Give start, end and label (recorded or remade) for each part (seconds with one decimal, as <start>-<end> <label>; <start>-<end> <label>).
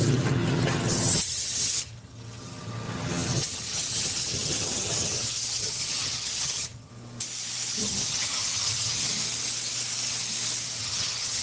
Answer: 0.0-6.9 remade; 6.9-7.8 recorded; 7.8-9.0 remade; 9.0-10.8 recorded; 10.8-11.4 remade